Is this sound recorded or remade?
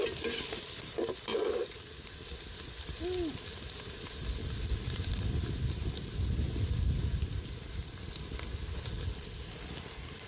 recorded